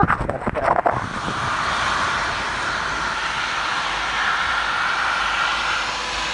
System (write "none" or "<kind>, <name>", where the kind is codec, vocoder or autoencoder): none